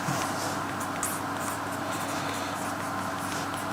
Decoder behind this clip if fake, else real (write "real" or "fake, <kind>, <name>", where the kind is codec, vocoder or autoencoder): real